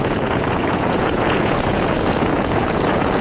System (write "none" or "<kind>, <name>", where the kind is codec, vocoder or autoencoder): vocoder, Vocos